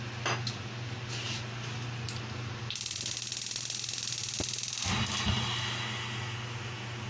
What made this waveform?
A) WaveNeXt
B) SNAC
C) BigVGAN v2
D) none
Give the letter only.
D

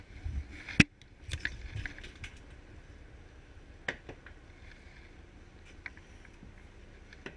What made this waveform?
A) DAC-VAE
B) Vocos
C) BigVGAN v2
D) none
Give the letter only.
D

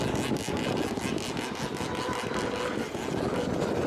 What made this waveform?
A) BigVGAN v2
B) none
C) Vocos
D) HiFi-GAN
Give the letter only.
B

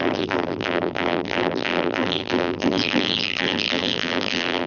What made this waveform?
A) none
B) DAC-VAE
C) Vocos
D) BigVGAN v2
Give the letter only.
D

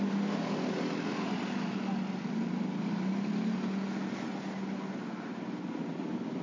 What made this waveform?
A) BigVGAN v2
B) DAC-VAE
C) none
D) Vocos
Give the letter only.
C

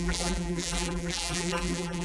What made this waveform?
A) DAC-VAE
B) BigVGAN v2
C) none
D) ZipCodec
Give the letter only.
B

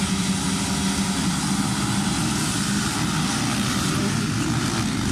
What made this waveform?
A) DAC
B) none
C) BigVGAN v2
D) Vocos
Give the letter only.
B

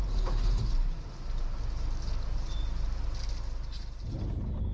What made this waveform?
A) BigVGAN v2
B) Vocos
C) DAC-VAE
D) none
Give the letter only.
D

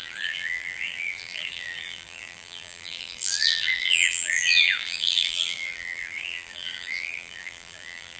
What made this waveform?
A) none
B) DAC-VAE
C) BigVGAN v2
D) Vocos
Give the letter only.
C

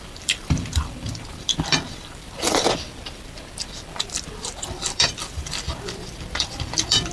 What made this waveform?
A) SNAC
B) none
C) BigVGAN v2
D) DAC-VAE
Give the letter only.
C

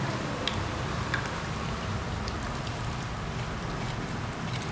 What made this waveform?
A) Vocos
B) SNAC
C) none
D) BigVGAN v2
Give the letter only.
D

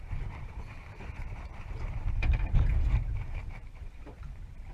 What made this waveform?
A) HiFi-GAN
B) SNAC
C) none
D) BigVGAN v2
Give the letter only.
D